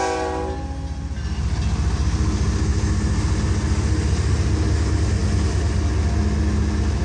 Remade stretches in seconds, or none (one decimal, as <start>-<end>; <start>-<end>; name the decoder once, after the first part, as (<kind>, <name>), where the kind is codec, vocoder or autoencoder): none